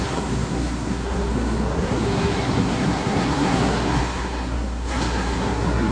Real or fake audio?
fake